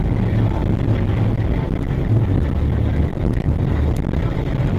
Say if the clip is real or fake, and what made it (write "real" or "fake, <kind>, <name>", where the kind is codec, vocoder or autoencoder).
real